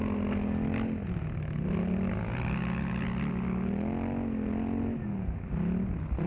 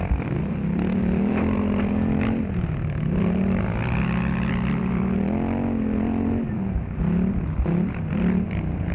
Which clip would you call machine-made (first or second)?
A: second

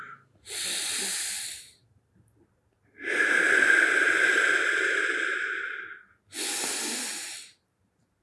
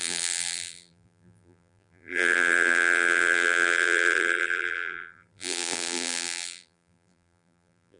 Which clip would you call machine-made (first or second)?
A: second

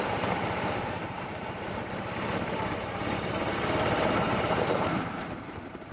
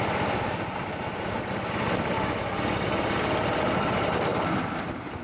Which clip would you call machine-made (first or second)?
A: first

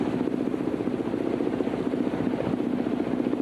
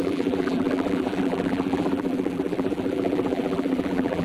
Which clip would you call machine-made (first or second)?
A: second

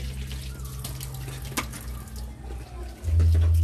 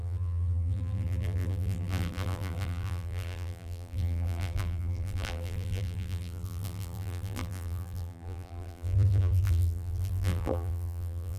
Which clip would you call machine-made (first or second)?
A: second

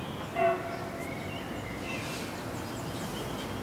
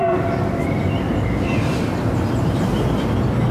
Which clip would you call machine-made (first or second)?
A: second